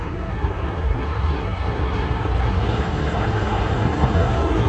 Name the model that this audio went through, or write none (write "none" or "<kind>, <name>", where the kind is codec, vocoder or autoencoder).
codec, SNAC